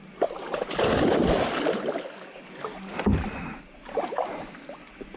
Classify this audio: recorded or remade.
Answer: recorded